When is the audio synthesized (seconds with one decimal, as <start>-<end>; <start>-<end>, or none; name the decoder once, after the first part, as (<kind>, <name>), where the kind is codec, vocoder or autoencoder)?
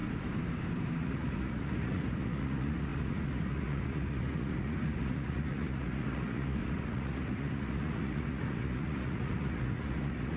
1.0-10.4 (vocoder, Vocos)